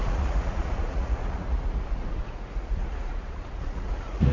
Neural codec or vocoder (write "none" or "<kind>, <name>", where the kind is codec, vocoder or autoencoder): vocoder, Vocos